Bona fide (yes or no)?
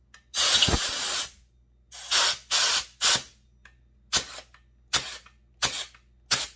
yes